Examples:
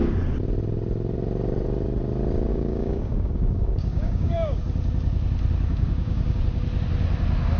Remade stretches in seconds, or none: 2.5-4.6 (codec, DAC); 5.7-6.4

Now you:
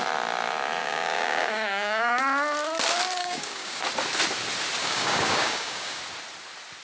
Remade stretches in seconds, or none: 0.8-2.2 (codec, DAC); 3.2-3.8; 4.8-6.0

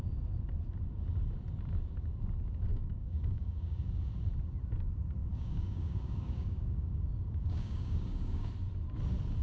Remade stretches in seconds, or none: 2.7-4.0 (codec, DAC); 5.3-8.5

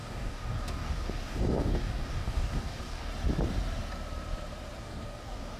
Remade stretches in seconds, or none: 0.0-3.1 (codec, DAC); 4.8-5.6

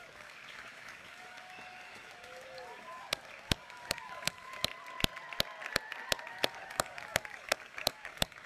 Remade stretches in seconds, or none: 0.0-4.7 (codec, DAC); 6.3-8.5

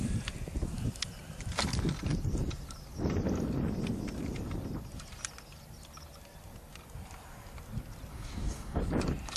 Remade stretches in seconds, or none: 8.1-8.8 (codec, DAC)

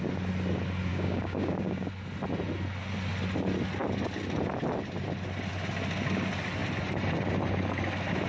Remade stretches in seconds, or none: 0.9-1.9 (codec, DAC)

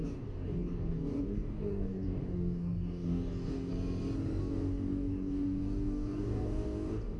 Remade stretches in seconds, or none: 0.0-3.7 (codec, DAC); 4.4-7.2